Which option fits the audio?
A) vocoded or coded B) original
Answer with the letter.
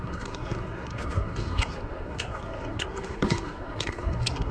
A